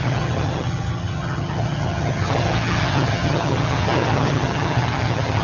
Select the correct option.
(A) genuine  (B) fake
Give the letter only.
B